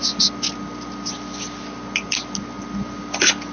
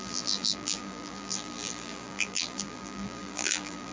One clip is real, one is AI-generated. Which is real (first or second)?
first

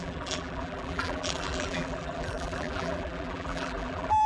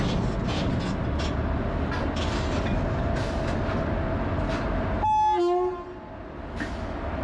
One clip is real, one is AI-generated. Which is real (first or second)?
second